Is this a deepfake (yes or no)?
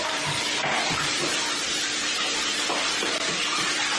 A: yes